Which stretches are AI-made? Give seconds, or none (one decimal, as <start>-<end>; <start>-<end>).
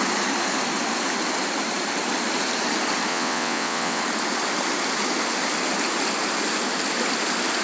3.1-4.0